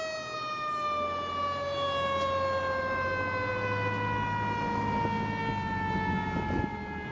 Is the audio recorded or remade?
recorded